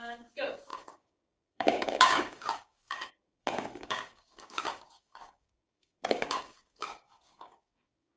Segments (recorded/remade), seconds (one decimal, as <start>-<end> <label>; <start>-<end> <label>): 0.0-8.2 remade